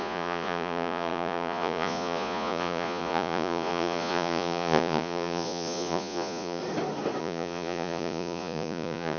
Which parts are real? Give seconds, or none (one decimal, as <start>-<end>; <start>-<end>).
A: 6.6-7.2